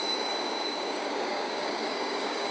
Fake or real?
fake